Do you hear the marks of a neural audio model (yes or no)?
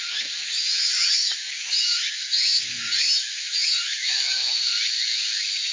yes